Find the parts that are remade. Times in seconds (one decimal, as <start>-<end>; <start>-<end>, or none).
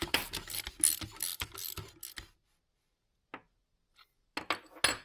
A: none